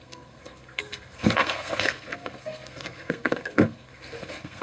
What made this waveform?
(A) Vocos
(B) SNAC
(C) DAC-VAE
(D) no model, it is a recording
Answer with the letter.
B